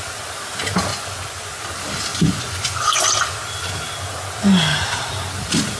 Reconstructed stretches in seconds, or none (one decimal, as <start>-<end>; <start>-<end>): 0.9-1.6; 2.1-3.0